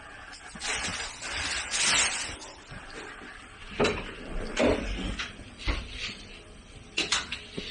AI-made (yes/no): no